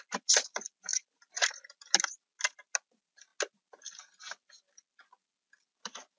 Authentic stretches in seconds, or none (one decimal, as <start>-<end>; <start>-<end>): 0.0-6.2